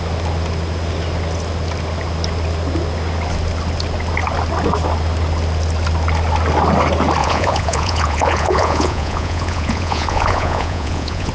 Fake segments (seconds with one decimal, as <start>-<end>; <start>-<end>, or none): 7.2-11.3